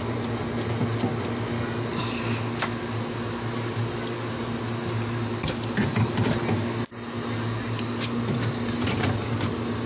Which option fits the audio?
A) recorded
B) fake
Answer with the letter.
A